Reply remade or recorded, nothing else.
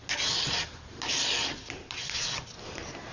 recorded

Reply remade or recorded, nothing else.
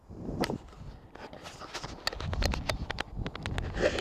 recorded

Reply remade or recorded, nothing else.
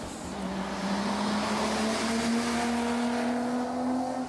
recorded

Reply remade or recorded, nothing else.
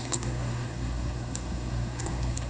remade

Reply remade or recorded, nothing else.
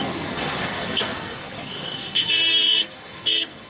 remade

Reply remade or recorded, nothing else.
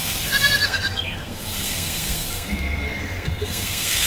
remade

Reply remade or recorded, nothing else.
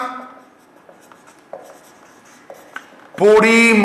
recorded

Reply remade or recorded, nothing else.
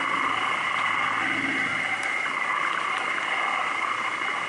recorded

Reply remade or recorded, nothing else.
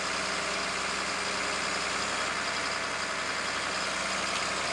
recorded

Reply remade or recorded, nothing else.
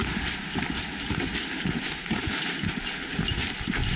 recorded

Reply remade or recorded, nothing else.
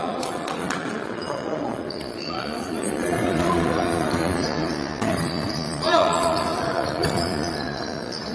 remade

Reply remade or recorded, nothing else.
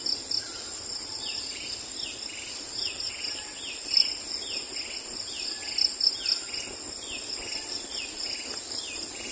recorded